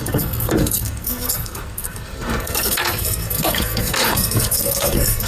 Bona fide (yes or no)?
no